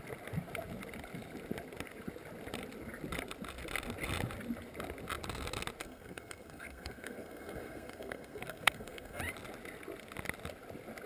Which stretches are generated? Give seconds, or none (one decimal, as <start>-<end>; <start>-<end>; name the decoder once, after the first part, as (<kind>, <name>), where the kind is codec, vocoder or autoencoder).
5.8-9.2 (codec, SNAC)